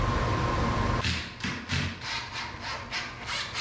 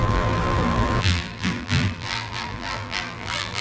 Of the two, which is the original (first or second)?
first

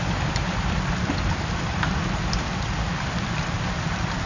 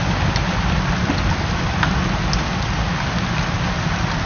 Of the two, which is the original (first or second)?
second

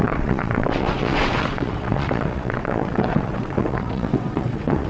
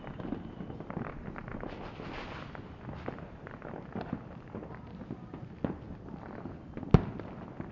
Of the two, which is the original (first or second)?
second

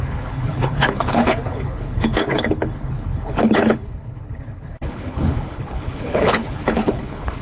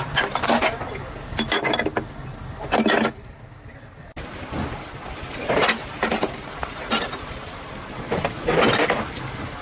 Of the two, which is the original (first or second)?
second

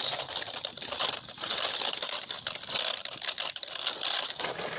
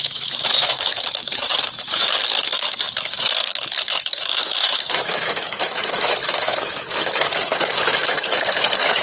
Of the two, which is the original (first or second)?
first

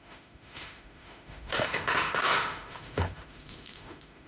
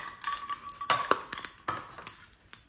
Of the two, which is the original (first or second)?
second